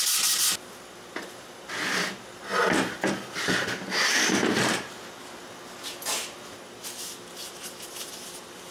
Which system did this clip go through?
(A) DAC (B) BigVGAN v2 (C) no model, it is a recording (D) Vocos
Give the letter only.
C